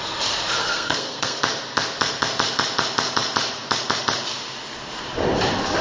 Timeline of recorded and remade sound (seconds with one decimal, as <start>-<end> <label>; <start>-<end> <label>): 0.0-0.6 recorded; 0.6-1.4 remade; 1.4-5.8 recorded